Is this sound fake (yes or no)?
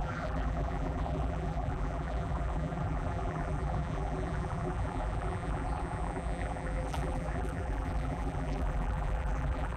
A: yes